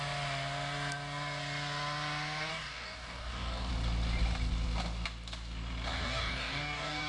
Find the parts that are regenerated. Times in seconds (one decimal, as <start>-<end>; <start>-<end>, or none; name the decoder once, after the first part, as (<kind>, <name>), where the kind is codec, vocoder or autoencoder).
2.5-3.7 (codec, DAC); 6.0-7.1